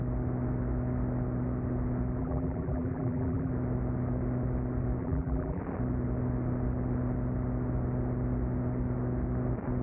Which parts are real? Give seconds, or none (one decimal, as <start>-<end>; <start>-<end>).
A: 0.0-2.2; 3.5-5.0; 5.6-9.8